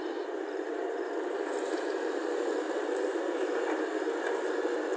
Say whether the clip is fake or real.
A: fake